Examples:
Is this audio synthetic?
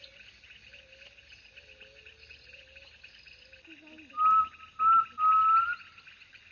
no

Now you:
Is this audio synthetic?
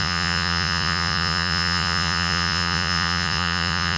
yes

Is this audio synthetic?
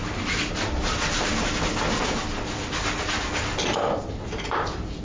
no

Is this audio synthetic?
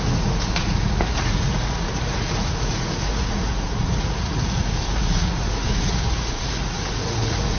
yes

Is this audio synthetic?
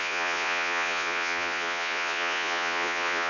yes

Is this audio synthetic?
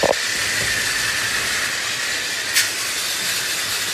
no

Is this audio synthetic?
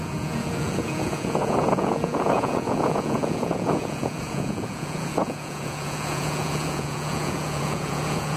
yes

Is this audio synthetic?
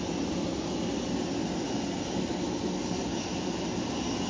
no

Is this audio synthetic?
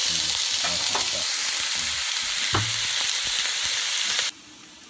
no